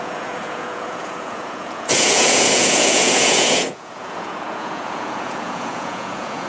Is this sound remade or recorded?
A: remade